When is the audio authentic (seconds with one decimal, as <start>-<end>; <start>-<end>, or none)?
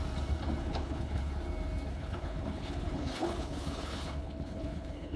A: 0.0-0.6; 1.3-1.9